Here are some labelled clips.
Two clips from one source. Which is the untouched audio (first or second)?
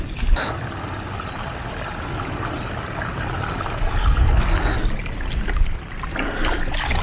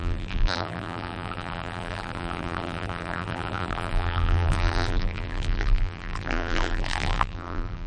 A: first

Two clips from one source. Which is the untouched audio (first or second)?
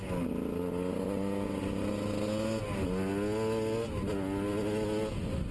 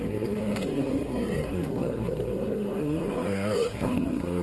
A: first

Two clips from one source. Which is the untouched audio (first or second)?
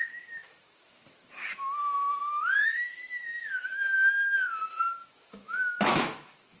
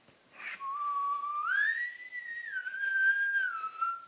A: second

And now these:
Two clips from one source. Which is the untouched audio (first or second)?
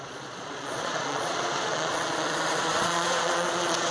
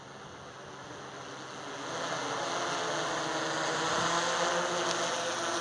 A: second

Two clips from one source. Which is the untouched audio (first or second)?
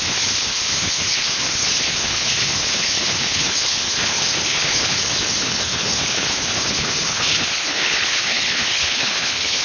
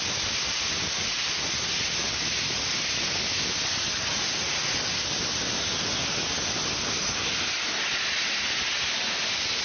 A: second